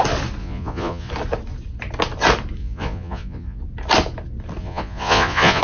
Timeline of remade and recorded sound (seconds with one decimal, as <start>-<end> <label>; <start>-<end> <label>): 0.0-0.4 recorded; 0.4-1.1 remade; 1.1-2.6 recorded; 2.6-3.6 remade; 3.6-4.6 recorded; 4.6-5.6 remade